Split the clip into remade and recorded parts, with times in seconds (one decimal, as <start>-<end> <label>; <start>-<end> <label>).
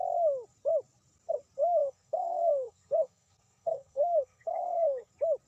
0.0-1.8 recorded; 1.8-5.1 remade; 5.1-5.5 recorded